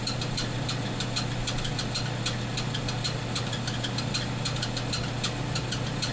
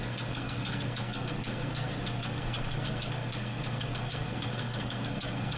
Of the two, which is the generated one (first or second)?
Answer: second